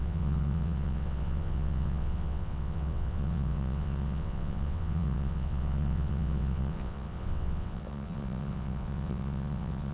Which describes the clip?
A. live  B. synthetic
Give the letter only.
B